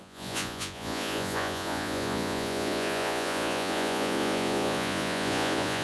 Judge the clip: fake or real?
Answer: fake